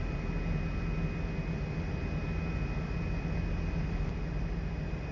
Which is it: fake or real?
real